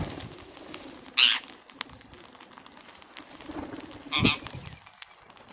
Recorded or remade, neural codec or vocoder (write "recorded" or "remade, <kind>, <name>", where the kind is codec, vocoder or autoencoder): recorded